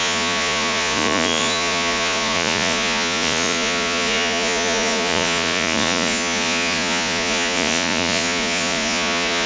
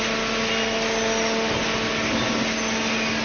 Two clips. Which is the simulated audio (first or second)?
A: first